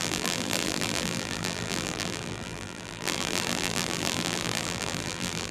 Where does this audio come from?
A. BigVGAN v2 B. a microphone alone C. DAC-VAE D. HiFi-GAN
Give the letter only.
A